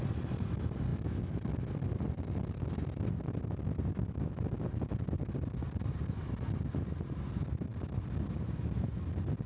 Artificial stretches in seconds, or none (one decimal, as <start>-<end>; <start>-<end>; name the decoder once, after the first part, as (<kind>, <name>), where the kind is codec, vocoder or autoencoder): none